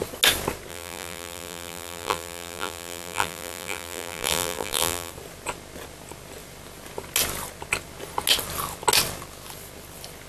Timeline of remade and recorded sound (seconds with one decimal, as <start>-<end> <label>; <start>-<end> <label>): 0.0-0.7 recorded; 0.7-5.1 remade; 5.1-10.3 recorded